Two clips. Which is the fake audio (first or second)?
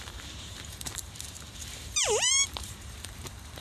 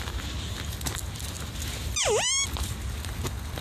first